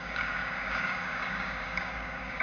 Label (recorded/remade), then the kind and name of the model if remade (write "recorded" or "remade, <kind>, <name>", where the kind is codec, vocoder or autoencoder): remade, codec, DAC